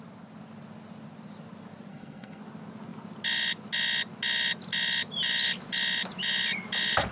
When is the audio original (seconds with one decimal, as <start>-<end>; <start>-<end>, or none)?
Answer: 0.0-1.9; 2.4-7.1